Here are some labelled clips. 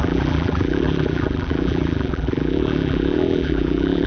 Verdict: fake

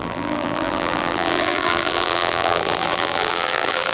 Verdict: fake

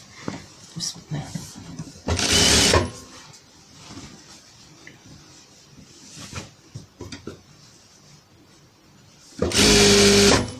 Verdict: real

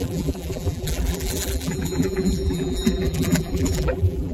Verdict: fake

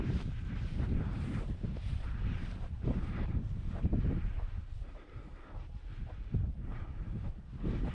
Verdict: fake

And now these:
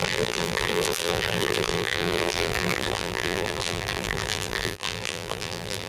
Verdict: fake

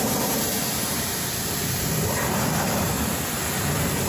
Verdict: fake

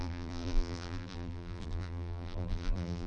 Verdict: fake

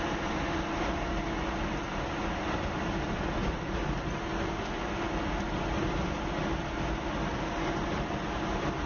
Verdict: real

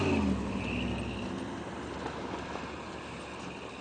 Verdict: real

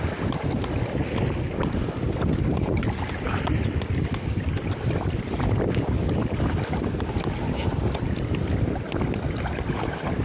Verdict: real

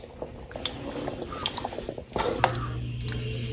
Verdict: real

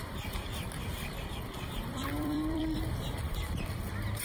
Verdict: fake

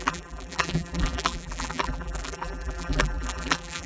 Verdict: fake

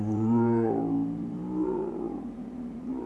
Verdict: fake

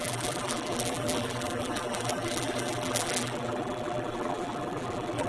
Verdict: fake